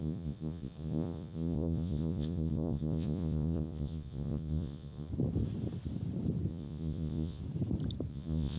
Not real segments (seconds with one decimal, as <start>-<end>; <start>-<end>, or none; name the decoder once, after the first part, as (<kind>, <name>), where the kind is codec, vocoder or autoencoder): 0.0-5.1 (vocoder, Vocos); 6.5-7.4; 8.1-8.6